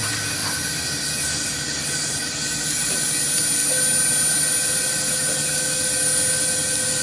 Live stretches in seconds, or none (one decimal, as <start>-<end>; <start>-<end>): 0.0-7.0